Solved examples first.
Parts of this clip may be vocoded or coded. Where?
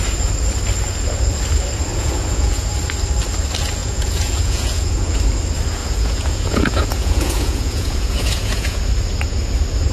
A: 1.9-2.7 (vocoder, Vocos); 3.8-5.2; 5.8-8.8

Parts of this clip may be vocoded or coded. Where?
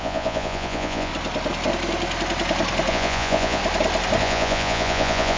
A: 0.0-1.1 (vocoder, Vocos); 2.9-3.6; 4.2-5.4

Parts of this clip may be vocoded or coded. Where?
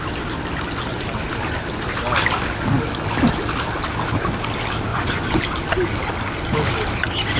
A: 4.9-5.4 (vocoder, Vocos)